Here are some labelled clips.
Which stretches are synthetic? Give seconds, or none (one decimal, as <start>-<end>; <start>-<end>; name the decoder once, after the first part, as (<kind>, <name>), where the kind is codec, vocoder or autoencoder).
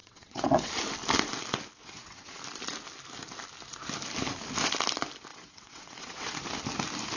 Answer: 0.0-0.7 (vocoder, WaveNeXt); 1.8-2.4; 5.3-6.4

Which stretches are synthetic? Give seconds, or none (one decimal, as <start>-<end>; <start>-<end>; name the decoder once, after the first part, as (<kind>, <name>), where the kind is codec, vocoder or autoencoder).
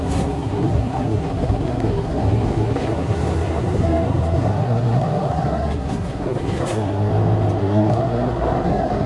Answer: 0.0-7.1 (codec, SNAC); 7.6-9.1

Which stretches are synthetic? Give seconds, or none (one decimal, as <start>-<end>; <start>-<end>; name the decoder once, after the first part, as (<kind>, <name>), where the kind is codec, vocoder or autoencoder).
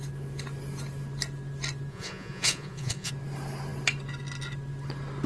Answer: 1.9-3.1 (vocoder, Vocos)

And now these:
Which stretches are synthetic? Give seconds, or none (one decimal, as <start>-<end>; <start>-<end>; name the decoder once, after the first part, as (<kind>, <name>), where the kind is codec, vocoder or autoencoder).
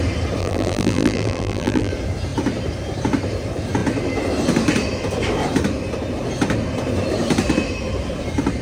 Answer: 0.4-1.9 (vocoder, BigVGAN v2)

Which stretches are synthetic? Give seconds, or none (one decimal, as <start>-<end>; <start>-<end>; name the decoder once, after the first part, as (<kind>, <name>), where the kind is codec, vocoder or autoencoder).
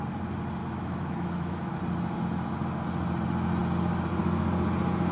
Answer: 0.6-1.8 (autoencoder, DAC-VAE)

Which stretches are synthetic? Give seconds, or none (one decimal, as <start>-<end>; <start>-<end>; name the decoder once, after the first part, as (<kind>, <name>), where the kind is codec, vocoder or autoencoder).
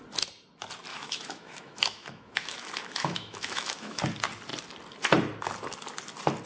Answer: 0.9-4.0 (autoencoder, DAC-VAE)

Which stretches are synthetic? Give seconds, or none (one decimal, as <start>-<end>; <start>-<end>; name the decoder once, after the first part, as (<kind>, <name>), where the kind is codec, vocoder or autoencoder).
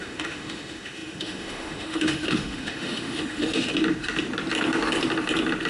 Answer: 0.0-3.7 (autoencoder, DAC-VAE)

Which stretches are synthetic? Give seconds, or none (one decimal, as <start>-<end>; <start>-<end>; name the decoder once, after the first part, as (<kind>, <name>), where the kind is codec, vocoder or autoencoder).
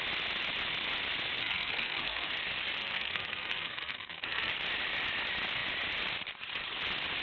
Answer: 1.4-2.3 (codec, SNAC); 2.8-4.5